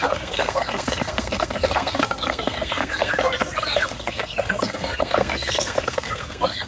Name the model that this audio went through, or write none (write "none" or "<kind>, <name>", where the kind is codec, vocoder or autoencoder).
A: codec, SNAC